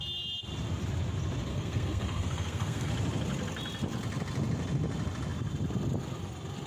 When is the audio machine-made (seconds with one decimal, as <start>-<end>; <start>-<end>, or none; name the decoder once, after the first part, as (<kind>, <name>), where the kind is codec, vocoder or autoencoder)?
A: 1.5-2.9 (codec, SNAC)